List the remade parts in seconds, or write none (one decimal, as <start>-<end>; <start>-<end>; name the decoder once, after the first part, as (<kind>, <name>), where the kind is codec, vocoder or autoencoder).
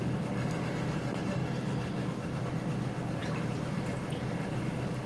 3.2-4.6 (vocoder, BigVGAN v2)